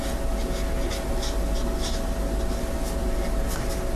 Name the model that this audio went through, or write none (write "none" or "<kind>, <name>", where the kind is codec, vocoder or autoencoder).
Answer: none